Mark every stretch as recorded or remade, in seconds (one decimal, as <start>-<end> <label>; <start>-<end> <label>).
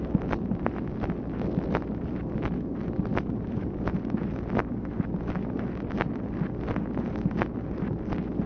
0.0-8.5 recorded